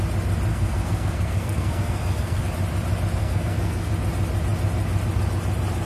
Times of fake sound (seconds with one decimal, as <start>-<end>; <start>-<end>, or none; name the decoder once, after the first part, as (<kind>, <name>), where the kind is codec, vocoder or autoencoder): 0.5-2.4 (codec, SNAC); 3.2-3.9